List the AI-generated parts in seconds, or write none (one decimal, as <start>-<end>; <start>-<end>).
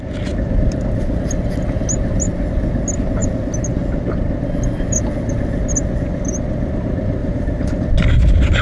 7.2-7.8